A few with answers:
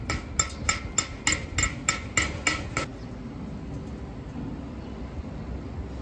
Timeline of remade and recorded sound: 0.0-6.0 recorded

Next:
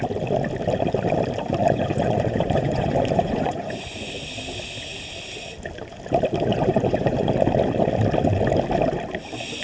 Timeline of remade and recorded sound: 0.0-1.6 recorded; 1.6-4.1 remade; 4.1-6.5 recorded; 6.5-7.3 remade; 7.3-9.6 recorded

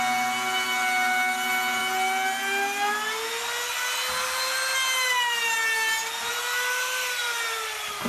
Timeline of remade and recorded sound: 0.0-8.1 recorded